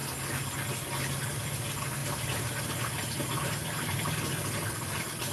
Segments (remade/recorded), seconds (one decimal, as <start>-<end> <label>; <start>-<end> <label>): 0.0-2.0 recorded; 2.0-4.3 remade; 4.3-5.3 recorded